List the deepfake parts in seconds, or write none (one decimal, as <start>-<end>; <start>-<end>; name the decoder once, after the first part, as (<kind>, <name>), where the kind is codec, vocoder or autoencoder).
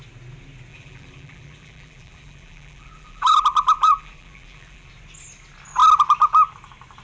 0.7-4.9 (vocoder, BigVGAN v2)